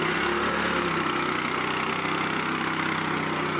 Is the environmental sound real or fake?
real